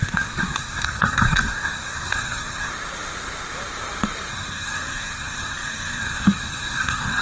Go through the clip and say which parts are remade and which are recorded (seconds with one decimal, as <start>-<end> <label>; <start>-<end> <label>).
0.0-2.7 remade; 2.7-4.3 recorded; 4.3-7.2 remade